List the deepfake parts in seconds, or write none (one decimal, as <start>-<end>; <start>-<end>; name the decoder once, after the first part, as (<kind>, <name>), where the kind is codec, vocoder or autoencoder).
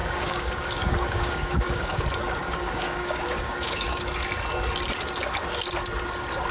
0.0-2.0 (codec, DAC); 2.4-4.0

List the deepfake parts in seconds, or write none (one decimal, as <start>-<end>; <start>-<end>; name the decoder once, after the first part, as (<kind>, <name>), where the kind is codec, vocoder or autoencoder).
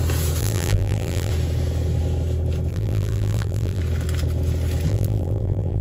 0.4-1.3 (vocoder, BigVGAN v2); 2.7-3.8; 4.9-5.8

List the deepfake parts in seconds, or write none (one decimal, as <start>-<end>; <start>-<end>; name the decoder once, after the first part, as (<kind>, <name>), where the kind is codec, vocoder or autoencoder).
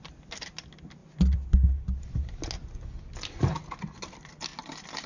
none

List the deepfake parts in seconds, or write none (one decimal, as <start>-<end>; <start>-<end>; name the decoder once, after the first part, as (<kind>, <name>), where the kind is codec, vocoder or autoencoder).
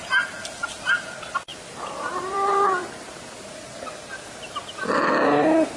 1.5-3.5 (vocoder, BigVGAN v2)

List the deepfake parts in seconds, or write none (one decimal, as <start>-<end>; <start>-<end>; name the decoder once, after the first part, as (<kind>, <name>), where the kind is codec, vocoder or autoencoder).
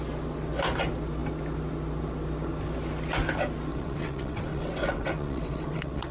3.7-6.1 (vocoder, WaveNeXt)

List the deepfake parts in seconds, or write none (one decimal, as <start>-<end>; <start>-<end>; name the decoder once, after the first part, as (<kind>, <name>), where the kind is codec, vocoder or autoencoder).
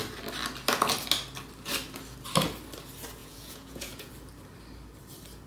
3.2-4.1 (vocoder, Vocos)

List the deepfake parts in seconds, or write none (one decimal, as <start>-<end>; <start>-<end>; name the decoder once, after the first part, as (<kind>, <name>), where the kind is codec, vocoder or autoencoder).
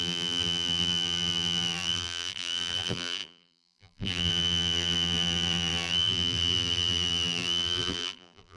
0.0-8.6 (vocoder, BigVGAN v2)